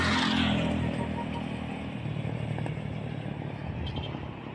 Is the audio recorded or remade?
recorded